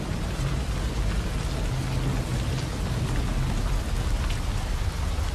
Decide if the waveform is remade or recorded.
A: recorded